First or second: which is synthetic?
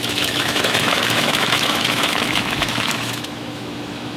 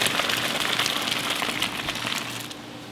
first